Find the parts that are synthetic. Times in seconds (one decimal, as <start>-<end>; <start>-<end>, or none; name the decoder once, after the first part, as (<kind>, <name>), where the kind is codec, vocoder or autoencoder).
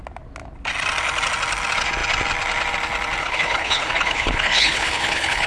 3.2-5.5 (codec, HILCodec)